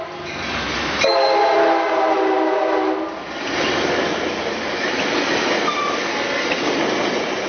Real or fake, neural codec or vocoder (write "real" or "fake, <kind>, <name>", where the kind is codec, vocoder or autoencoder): real